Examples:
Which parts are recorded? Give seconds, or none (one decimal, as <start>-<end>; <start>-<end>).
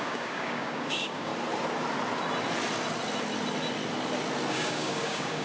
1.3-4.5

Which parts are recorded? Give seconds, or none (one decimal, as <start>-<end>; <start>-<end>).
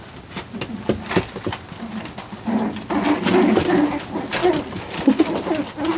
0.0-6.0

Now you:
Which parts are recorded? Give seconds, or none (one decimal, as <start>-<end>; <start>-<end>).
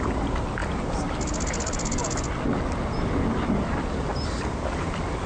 0.0-5.3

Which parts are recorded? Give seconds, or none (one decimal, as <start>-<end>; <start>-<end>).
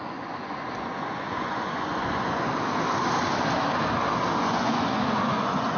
2.5-4.4